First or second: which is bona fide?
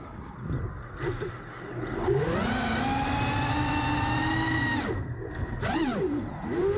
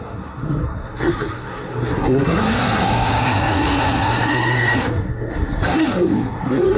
first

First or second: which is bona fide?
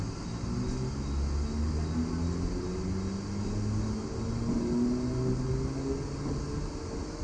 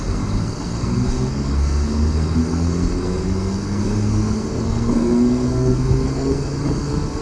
first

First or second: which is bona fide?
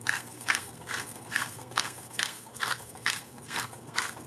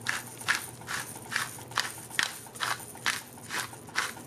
second